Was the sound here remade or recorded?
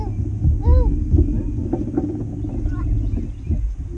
recorded